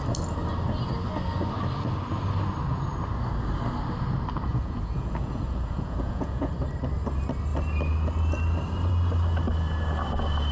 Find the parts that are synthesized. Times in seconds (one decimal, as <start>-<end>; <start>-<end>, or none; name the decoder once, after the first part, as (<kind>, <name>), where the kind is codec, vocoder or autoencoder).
4.5-6.5 (vocoder, Vocos)